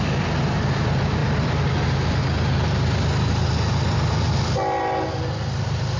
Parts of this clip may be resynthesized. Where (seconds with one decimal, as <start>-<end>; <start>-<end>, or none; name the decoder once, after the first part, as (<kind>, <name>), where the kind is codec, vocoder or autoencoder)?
none